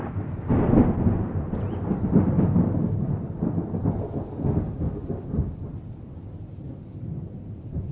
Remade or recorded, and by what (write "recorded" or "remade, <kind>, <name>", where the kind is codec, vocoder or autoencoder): recorded